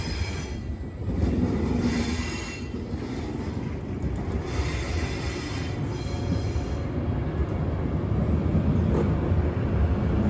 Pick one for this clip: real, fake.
real